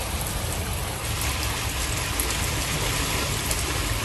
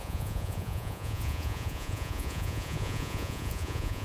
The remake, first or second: second